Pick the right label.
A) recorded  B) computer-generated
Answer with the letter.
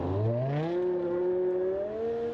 A